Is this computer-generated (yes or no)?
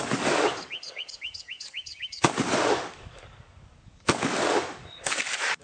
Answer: yes